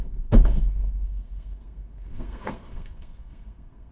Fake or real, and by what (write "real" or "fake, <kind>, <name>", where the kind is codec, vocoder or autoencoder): fake, codec, SNAC